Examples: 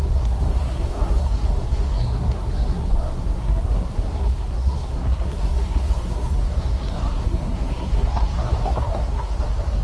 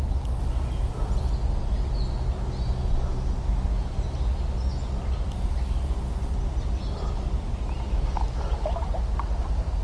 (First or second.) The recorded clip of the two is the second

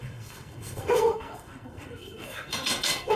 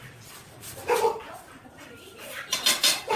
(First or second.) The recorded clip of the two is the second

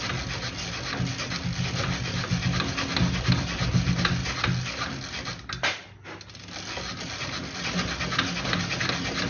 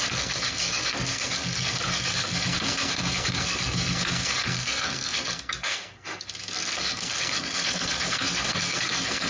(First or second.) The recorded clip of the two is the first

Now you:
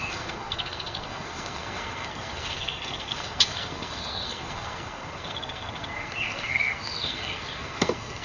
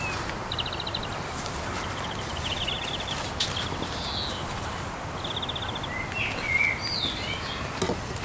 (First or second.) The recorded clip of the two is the second